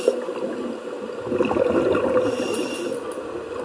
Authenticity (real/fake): real